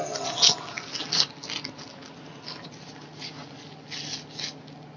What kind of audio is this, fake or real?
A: real